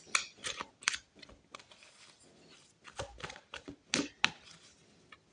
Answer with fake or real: real